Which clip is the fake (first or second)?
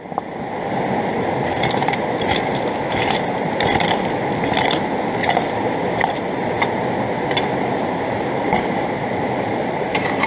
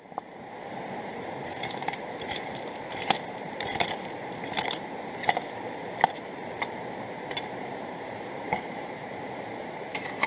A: second